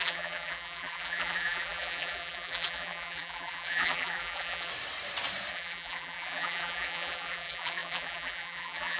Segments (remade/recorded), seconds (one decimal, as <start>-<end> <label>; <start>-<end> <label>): 0.0-4.7 remade; 4.7-5.5 recorded; 5.5-9.0 remade